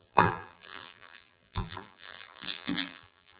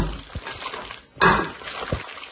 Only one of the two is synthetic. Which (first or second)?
first